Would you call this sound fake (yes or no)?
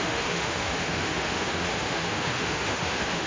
yes